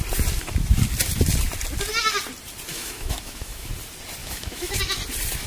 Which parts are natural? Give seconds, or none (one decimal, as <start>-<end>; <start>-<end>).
0.0-2.7; 3.7-4.2; 4.8-5.5